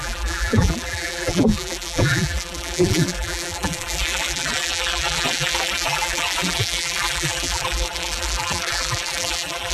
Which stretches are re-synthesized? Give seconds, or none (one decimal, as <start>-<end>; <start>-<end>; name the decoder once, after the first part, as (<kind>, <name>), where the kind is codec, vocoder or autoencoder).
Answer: 0.0-9.7 (vocoder, BigVGAN v2)